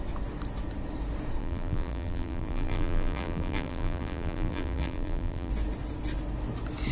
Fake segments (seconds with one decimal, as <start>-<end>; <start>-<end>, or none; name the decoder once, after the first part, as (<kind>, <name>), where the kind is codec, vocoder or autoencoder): 1.4-5.5 (vocoder, BigVGAN v2)